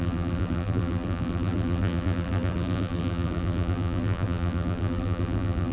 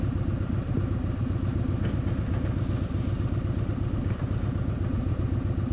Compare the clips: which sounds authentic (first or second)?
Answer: second